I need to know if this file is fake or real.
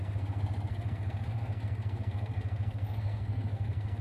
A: fake